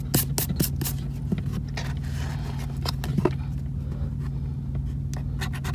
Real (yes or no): yes